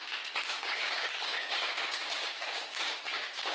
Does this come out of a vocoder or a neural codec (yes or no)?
yes